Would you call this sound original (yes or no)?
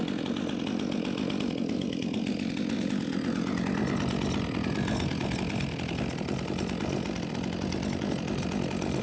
yes